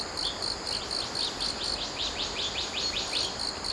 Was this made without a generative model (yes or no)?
yes